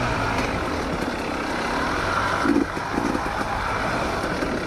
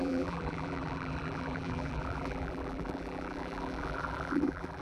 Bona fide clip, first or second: first